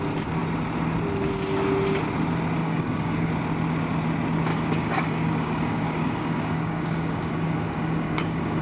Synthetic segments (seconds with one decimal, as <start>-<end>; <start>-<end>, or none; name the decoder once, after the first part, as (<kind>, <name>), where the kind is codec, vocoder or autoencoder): 2.6-3.3 (codec, DAC); 4.5-8.6